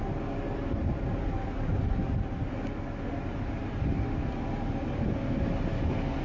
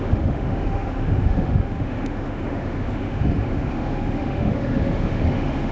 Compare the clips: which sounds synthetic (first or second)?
second